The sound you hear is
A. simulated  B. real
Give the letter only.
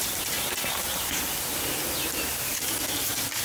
A